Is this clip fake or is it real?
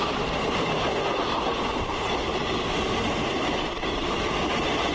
real